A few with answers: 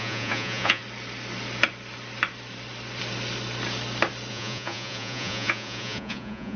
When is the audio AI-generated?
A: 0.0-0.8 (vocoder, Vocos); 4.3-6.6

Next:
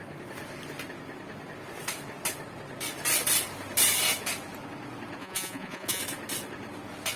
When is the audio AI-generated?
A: 5.2-6.0 (vocoder, Vocos)

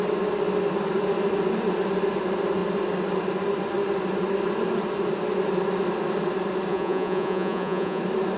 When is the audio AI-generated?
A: 6.7-8.0 (vocoder, Vocos)